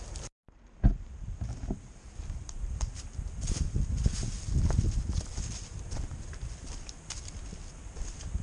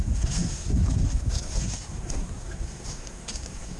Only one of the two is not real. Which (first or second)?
second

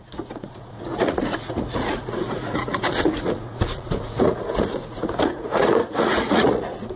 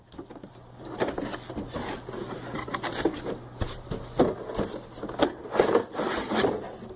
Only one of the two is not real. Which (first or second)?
first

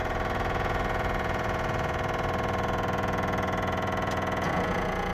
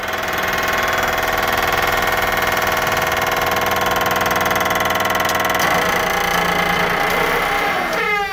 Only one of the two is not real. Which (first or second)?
first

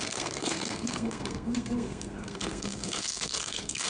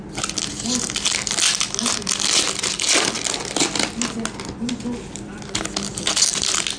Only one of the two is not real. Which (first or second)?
first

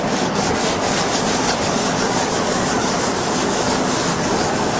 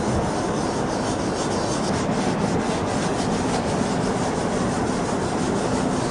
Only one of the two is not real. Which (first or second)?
first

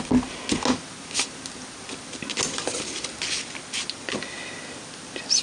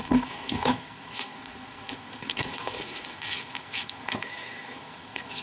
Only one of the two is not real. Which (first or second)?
second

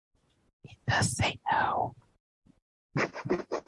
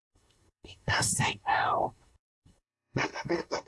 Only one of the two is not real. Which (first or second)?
second